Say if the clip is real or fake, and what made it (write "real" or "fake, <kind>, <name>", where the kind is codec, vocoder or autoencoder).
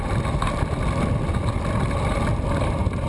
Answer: real